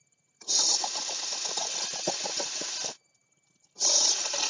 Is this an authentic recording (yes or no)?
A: yes